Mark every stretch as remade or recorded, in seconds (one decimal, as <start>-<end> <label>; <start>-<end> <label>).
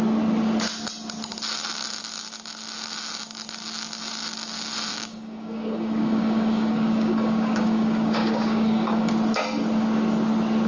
0.0-4.9 recorded; 4.9-9.1 remade; 9.1-10.7 recorded